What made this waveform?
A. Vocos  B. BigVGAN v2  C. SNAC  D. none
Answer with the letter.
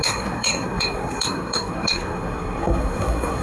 C